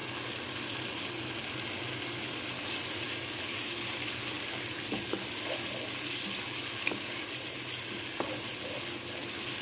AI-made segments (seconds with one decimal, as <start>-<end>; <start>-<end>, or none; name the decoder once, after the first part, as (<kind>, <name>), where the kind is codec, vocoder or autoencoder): none